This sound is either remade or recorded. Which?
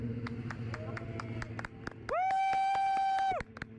recorded